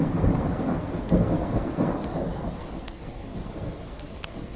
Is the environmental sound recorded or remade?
remade